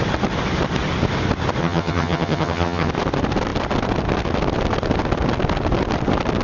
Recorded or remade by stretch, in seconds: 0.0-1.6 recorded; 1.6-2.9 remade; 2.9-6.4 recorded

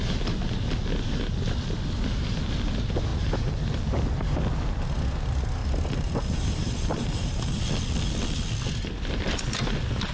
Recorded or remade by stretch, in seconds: 0.0-3.1 recorded; 3.1-3.6 remade; 3.6-5.6 recorded; 5.6-7.6 remade; 7.6-10.1 recorded

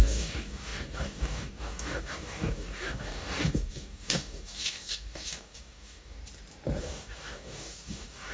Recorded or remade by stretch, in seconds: 0.0-6.2 remade; 6.2-6.8 recorded; 6.8-8.3 remade